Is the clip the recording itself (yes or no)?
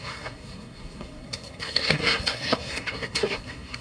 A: no